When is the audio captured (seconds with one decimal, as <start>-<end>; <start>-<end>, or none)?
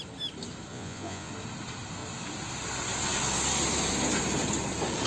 0.0-0.7; 1.3-5.1